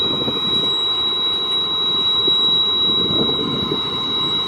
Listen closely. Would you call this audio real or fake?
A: fake